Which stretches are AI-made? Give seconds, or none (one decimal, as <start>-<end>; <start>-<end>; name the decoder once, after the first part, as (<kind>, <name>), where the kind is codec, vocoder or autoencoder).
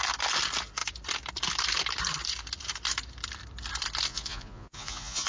4.1-5.3 (vocoder, Vocos)